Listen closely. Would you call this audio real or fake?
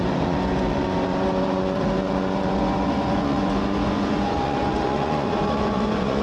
fake